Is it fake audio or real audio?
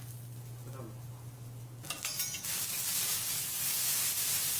real